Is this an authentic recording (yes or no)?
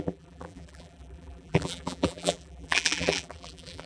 no